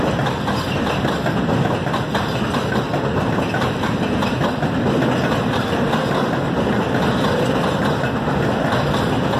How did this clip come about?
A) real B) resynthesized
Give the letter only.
A